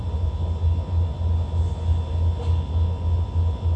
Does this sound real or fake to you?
real